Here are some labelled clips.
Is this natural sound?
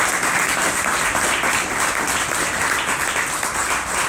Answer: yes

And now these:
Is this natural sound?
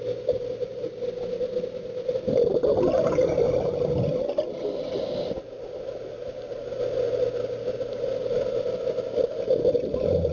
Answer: yes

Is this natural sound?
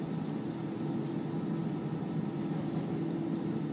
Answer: yes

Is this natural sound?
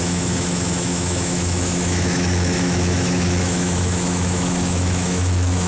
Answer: no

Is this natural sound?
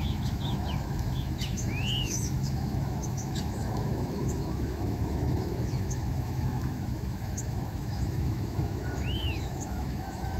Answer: no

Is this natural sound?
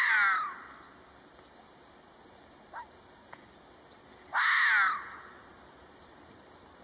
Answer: yes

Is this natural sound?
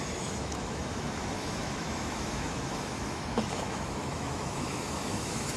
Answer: no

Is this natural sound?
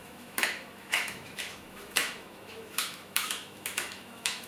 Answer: no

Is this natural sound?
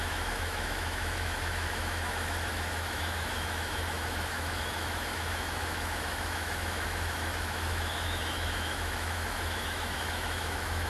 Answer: no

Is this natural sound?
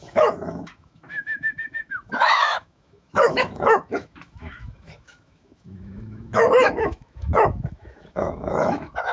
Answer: no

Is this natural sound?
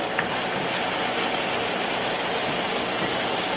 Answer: yes